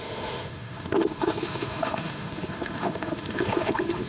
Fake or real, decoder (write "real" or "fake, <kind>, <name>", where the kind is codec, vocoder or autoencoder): fake, autoencoder, DAC-VAE